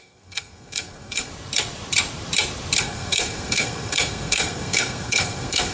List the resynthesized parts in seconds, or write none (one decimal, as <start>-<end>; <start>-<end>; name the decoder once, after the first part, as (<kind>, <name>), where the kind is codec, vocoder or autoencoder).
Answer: 0.0-1.3 (codec, SNAC); 2.8-5.7